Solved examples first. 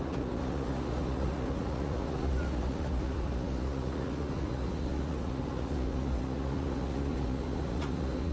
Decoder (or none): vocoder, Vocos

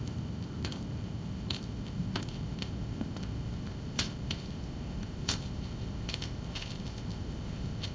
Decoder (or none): codec, ZipCodec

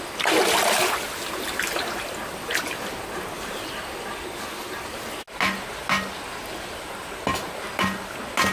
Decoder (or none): none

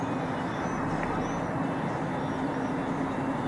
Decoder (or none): none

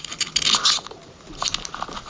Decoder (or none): none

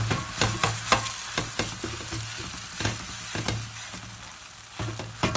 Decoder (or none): none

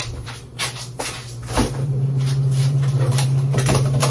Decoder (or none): vocoder, BigVGAN v2